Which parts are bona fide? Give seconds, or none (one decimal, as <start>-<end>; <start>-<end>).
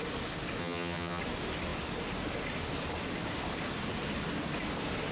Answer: 0.0-0.6; 1.2-5.1